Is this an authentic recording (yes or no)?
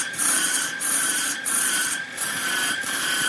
no